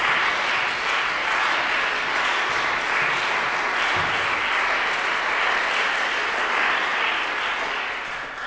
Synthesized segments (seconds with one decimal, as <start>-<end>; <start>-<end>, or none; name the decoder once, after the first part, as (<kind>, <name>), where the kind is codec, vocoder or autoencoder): none